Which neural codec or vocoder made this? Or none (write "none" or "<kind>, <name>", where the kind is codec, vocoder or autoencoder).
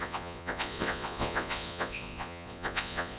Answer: vocoder, Vocos